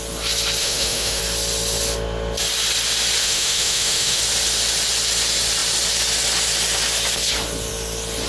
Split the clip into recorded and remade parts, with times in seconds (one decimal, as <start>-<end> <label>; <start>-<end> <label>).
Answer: 0.0-0.6 recorded; 0.6-1.2 remade; 1.2-3.2 recorded; 3.2-4.2 remade; 4.2-8.3 recorded